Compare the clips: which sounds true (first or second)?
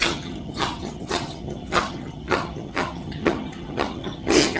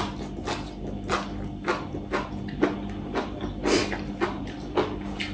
second